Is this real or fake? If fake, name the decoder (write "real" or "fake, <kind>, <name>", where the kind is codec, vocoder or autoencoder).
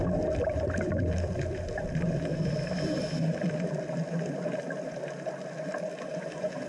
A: fake, vocoder, BigVGAN v2